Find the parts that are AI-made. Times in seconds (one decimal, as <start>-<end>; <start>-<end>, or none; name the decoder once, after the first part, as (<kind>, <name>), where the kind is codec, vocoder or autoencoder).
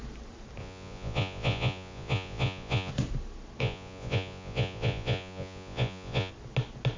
0.6-2.9 (vocoder, Vocos); 3.6-6.3